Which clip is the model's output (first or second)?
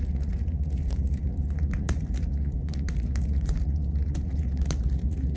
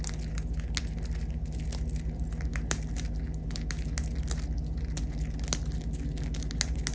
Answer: first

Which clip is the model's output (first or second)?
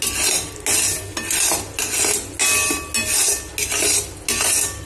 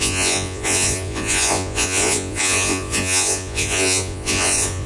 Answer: second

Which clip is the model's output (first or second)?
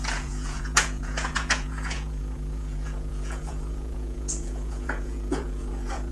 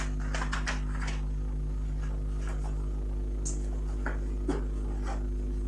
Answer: first